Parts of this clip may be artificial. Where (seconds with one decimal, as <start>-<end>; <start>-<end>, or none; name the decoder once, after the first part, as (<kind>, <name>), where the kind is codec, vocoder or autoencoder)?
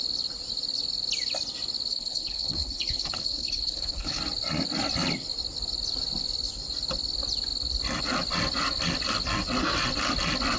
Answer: 1.9-4.2 (codec, HILCodec)